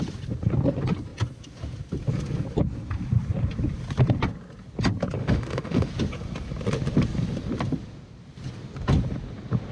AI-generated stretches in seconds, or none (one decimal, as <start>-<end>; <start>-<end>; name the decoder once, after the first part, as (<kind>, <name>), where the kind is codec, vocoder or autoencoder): 5.2-5.9 (autoencoder, DAC-VAE)